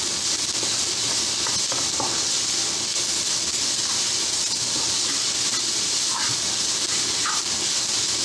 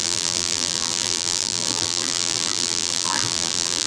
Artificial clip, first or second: second